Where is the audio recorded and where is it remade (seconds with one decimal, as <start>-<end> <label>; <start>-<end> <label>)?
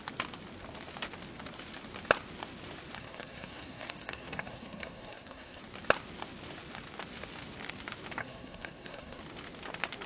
0.0-3.0 recorded; 3.0-5.6 remade; 5.6-8.2 recorded; 8.2-9.2 remade; 9.2-10.1 recorded